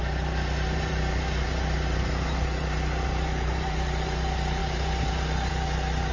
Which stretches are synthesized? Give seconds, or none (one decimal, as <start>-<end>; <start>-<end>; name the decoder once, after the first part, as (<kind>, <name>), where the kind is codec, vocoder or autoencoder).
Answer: 0.0-6.1 (vocoder, BigVGAN v2)